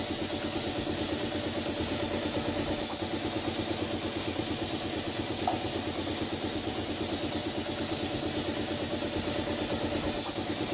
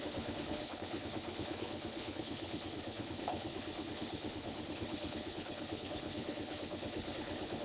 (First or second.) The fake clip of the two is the second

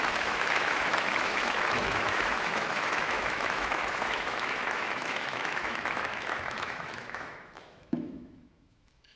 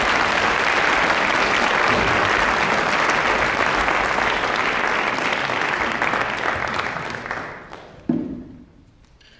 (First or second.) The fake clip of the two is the first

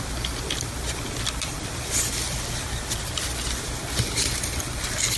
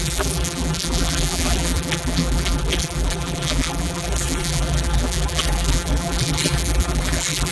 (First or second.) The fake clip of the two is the second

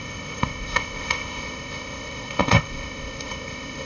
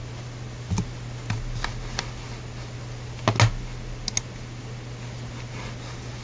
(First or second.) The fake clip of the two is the first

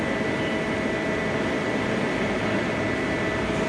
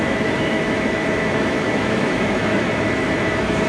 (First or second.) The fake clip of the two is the second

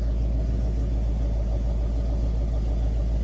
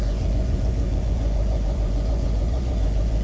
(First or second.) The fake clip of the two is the second